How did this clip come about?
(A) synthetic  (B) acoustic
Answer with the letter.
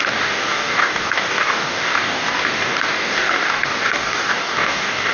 A